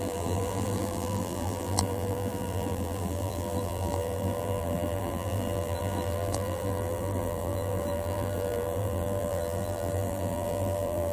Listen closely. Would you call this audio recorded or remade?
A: remade